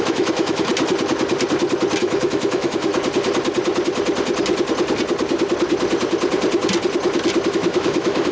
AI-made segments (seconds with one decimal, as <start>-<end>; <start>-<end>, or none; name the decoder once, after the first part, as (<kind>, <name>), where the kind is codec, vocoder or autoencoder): 0.0-0.7 (autoencoder, DAC-VAE); 2.0-2.9; 7.5-8.3